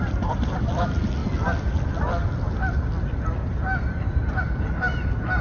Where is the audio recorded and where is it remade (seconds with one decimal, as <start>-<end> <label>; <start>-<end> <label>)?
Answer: 0.0-5.4 recorded